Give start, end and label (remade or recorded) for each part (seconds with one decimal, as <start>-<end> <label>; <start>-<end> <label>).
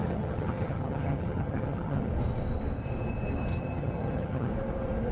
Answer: 0.0-2.1 remade; 2.1-3.5 recorded; 3.5-4.5 remade; 4.5-5.1 recorded